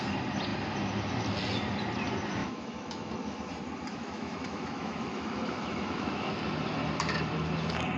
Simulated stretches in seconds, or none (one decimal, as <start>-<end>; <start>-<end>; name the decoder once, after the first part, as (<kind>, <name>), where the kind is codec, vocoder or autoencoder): 2.4-3.1 (autoencoder, DAC-VAE); 3.9-6.3